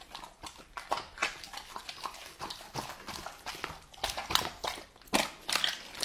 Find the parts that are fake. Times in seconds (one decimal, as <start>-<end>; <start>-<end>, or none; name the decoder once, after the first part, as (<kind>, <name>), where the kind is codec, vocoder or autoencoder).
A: none

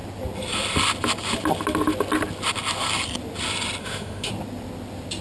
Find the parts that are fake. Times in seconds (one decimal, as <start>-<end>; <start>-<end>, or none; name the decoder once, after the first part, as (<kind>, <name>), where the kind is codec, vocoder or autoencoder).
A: 3.8-4.3 (autoencoder, DAC-VAE)

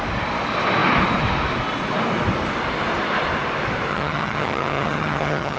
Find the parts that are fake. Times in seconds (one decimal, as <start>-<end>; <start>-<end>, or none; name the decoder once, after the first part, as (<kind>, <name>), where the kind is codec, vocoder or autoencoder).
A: 3.9-5.6 (vocoder, HiFi-GAN)